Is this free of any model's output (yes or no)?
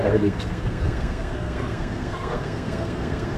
no